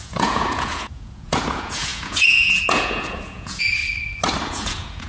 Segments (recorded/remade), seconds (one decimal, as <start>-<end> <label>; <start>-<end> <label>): 0.0-3.8 remade; 3.8-4.4 recorded; 4.4-5.1 remade